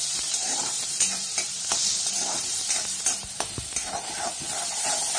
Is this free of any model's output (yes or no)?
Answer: no